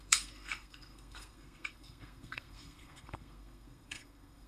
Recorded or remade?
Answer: remade